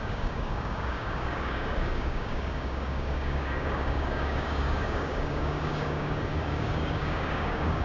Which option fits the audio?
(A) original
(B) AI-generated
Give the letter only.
B